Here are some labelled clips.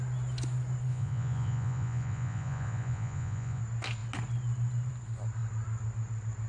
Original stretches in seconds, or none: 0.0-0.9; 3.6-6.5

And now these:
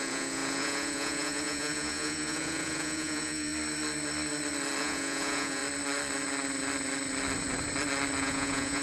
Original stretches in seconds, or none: 3.5-4.8; 5.6-8.2

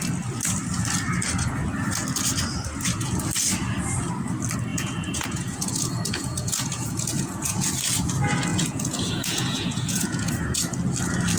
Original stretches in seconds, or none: 0.0-4.7; 8.1-8.5; 10.3-11.4

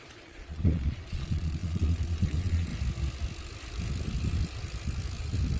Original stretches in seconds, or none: 2.7-5.6

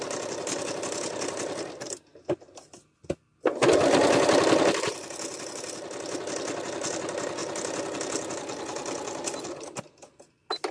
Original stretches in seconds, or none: 0.0-10.7

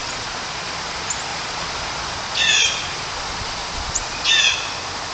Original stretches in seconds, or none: 0.7-1.3; 4.4-5.1

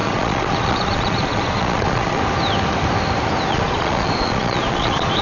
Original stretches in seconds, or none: 2.2-3.5